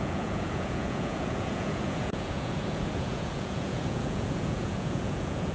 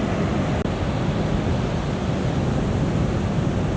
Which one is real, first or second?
second